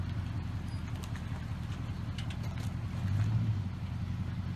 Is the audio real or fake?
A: real